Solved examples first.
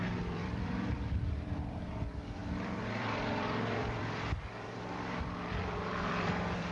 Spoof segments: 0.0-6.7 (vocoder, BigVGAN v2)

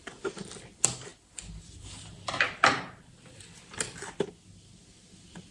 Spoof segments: 1.1-4.3 (vocoder, BigVGAN v2)

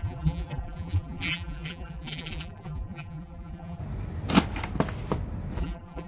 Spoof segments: 0.0-3.8 (vocoder, BigVGAN v2); 5.6-6.1